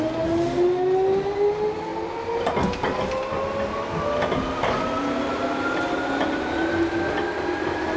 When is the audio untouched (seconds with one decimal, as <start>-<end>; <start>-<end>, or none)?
0.0-8.0

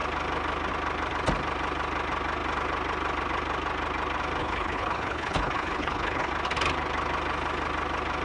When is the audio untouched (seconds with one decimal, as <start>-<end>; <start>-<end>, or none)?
0.0-4.4; 6.3-8.2

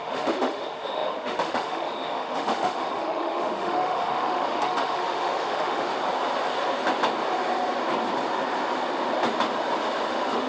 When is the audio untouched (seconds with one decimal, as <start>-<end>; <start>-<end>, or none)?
5.9-10.1

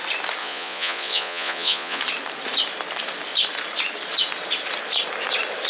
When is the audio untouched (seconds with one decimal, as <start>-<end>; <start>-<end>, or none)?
0.0-0.4; 2.0-5.7

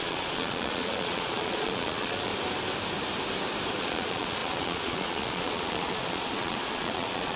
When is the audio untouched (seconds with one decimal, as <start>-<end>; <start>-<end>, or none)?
2.3-3.8

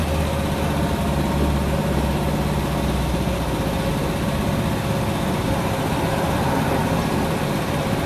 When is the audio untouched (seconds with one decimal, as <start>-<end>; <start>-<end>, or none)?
0.0-8.1

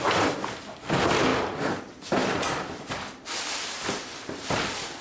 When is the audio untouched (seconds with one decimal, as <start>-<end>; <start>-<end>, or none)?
0.0-5.0